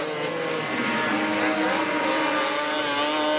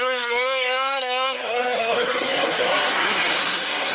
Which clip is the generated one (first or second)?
second